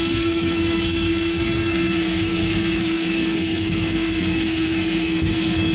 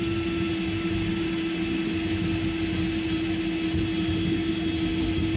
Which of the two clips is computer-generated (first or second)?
first